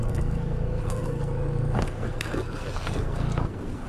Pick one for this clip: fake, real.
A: fake